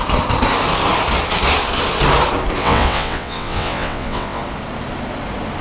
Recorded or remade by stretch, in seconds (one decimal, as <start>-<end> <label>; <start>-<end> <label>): 0.0-2.6 recorded; 2.6-4.4 remade; 4.4-5.6 recorded